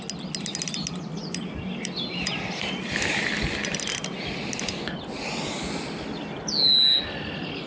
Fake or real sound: real